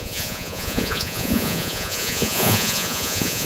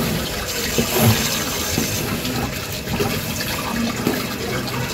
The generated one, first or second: first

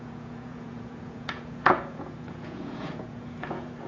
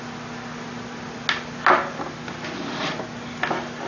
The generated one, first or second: first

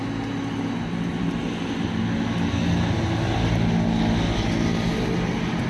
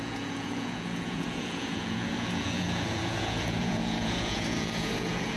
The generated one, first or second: second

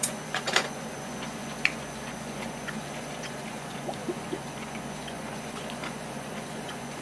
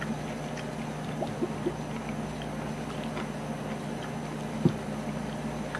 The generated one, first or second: first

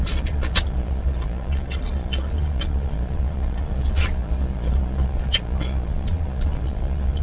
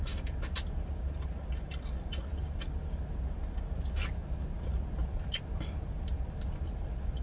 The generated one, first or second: first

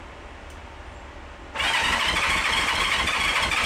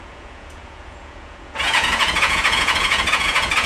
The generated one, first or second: second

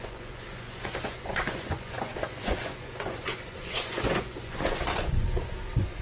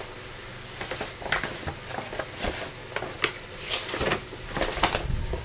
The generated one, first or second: first